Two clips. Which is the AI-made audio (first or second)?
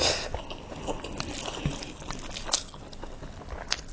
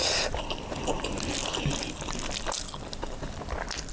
second